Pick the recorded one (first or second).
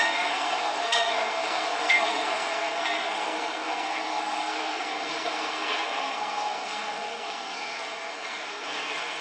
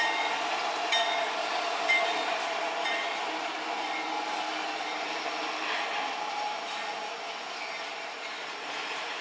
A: second